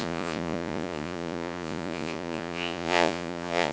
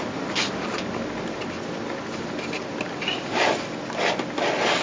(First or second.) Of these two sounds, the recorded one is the second